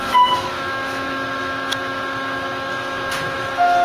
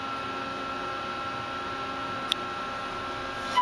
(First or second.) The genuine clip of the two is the second